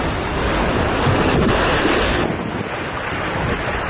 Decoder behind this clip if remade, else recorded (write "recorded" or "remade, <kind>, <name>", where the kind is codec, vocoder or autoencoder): recorded